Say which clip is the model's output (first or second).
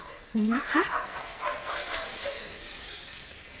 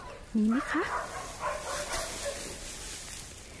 first